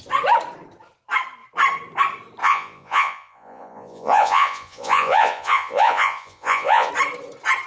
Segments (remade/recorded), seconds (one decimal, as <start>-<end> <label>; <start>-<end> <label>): 0.0-2.4 recorded; 2.4-6.9 remade; 6.9-7.7 recorded